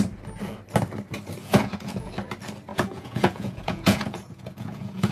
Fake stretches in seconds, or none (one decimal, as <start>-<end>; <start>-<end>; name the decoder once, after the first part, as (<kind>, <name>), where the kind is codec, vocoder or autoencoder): 1.4-2.1 (vocoder, Vocos); 2.7-5.1